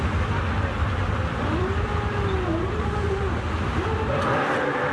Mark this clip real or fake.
real